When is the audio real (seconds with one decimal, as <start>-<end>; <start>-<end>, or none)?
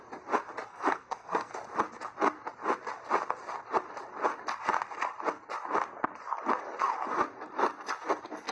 0.0-0.7; 1.5-8.5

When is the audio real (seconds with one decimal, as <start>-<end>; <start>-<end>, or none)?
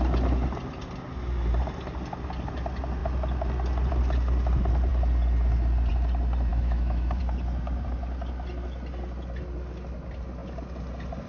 0.0-6.5; 7.2-11.3